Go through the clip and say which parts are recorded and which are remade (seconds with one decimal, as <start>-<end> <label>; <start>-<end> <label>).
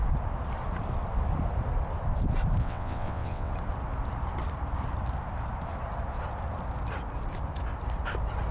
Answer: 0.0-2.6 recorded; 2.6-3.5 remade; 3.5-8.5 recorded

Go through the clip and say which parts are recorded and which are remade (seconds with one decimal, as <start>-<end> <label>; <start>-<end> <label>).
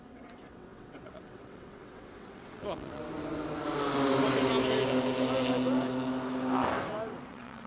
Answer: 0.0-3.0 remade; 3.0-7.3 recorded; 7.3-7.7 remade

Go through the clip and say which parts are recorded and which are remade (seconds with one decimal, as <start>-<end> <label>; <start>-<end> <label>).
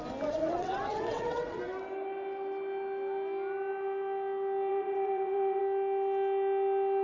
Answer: 0.0-0.4 recorded; 0.4-1.6 remade; 1.6-4.7 recorded; 4.7-5.6 remade; 5.6-7.0 recorded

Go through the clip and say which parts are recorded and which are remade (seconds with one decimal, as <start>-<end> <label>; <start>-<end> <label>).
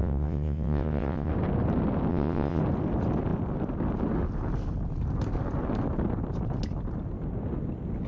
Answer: 0.0-1.3 remade; 1.3-2.1 recorded; 2.1-2.6 remade; 2.6-8.1 recorded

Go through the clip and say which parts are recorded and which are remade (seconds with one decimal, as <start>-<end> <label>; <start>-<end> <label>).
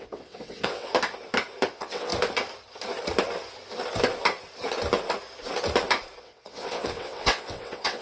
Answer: 0.0-0.9 remade; 0.9-1.7 recorded; 1.7-2.1 remade; 2.1-6.2 recorded; 6.2-8.0 remade